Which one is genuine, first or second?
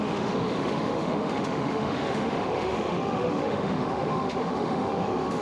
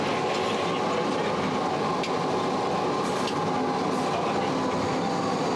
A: second